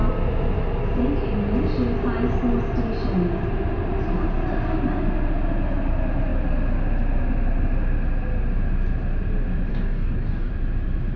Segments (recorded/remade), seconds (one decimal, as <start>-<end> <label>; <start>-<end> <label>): 0.0-9.7 recorded; 9.7-10.5 remade; 10.5-11.2 recorded